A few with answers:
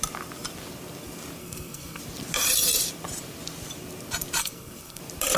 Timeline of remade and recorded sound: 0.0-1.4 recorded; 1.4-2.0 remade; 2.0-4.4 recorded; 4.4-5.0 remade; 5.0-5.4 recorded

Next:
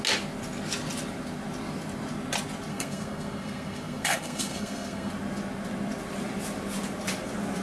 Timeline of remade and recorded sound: 0.0-2.7 recorded; 2.7-5.1 remade; 5.1-7.6 recorded

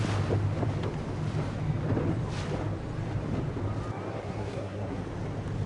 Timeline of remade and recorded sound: 0.0-4.1 recorded; 4.1-5.0 remade; 5.0-5.7 recorded

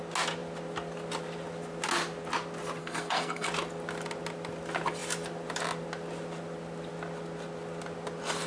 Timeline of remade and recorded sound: 0.0-2.8 recorded; 2.8-3.5 remade; 3.5-8.5 recorded

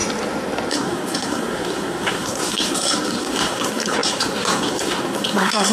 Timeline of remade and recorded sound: 0.0-0.7 recorded; 0.7-5.7 remade

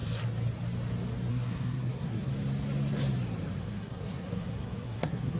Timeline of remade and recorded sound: 0.0-1.3 recorded; 1.3-2.3 remade; 2.3-3.6 recorded; 3.6-5.4 remade

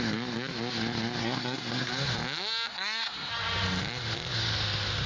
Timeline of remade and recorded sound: 0.0-1.2 recorded; 1.2-1.9 remade; 1.9-2.7 recorded; 2.7-3.3 remade; 3.3-5.1 recorded

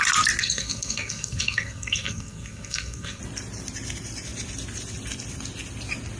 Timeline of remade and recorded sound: 0.0-0.4 recorded; 0.4-3.2 remade; 3.2-6.2 recorded